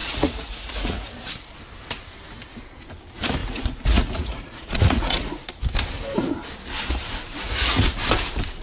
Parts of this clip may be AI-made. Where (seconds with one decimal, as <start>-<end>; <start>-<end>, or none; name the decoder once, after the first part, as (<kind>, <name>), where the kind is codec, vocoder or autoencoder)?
0.0-1.1 (vocoder, Vocos); 3.4-5.3; 7.3-8.0